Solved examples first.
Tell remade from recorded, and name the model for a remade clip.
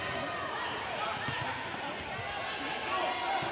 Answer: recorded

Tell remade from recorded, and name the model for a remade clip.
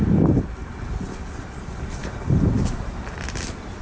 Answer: recorded